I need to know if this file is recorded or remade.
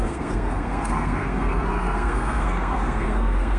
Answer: remade